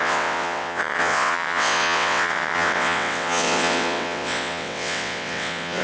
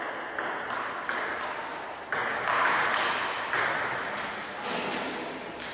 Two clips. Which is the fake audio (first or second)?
first